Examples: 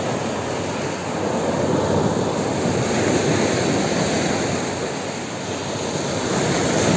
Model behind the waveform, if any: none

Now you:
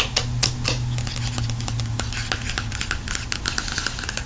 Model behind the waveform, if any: none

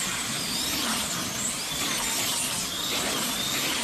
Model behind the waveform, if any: vocoder, BigVGAN v2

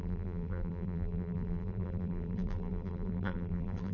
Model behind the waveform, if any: vocoder, BigVGAN v2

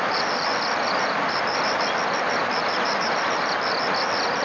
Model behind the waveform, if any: none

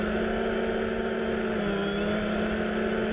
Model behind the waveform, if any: none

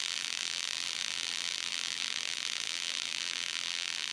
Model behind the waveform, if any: vocoder, BigVGAN v2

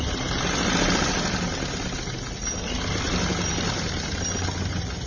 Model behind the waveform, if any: none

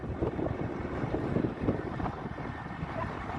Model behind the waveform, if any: vocoder, BigVGAN v2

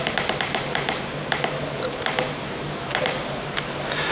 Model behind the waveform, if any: vocoder, BigVGAN v2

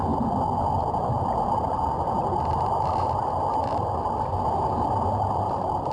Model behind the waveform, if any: none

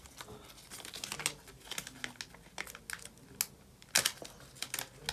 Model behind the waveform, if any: none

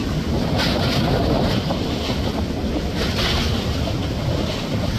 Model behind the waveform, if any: none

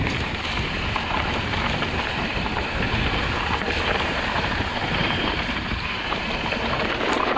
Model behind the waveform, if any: vocoder, BigVGAN v2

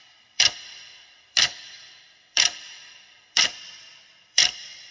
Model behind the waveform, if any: vocoder, BigVGAN v2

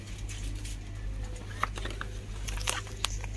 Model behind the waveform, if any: none